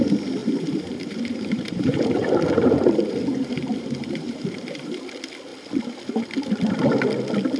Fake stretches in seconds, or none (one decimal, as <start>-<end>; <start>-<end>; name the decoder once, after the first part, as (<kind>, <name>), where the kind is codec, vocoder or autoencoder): 0.4-5.0 (vocoder, BigVGAN v2)